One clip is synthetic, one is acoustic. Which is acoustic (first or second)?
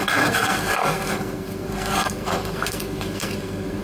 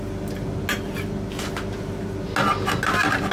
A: second